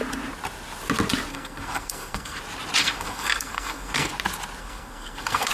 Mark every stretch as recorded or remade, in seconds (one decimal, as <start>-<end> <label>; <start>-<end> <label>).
0.0-1.3 recorded; 1.3-2.4 remade; 2.4-2.8 recorded; 2.8-4.1 remade; 4.1-4.6 recorded; 4.6-5.5 remade